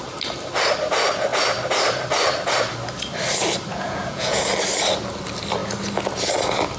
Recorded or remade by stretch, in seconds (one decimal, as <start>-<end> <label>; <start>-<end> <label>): 0.0-3.7 recorded; 3.7-4.4 remade; 4.4-6.8 recorded